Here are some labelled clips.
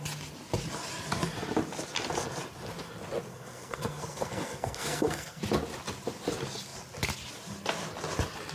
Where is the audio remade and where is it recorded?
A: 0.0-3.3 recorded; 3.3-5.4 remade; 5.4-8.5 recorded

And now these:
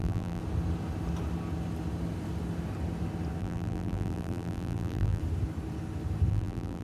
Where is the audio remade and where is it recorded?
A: 0.0-0.4 remade; 0.4-3.4 recorded; 3.4-5.2 remade; 5.2-6.3 recorded; 6.3-6.8 remade